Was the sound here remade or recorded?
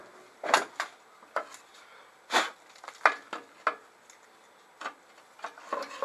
recorded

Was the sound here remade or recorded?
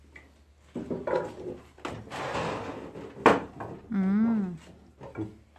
recorded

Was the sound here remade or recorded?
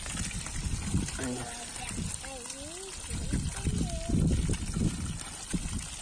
recorded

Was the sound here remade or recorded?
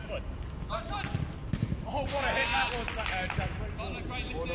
recorded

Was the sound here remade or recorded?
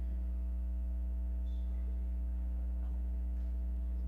recorded